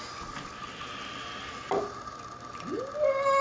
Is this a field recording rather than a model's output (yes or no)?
yes